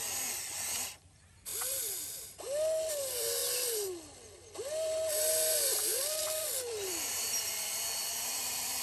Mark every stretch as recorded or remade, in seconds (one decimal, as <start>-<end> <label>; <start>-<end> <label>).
0.0-8.8 remade